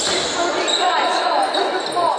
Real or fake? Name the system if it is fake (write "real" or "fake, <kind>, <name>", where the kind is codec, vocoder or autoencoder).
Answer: real